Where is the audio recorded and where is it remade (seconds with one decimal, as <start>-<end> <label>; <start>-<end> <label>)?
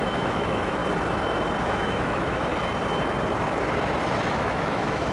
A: 0.0-0.8 remade; 0.8-1.6 recorded; 1.6-2.5 remade; 2.5-4.3 recorded; 4.3-5.1 remade